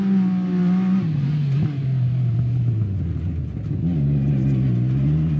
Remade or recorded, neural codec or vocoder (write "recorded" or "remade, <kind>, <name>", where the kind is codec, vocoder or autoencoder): recorded